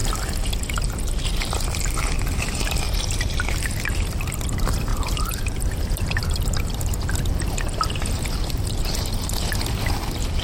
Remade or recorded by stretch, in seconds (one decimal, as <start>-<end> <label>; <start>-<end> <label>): 0.0-4.9 recorded; 4.9-5.4 remade; 5.4-6.2 recorded; 6.2-6.8 remade; 6.8-10.4 recorded